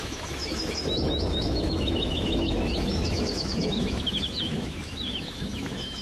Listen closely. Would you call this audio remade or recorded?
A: remade